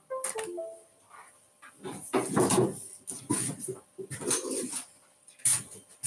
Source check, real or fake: real